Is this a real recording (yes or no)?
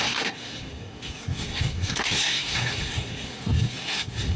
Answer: no